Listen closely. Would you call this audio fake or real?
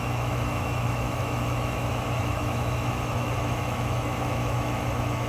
fake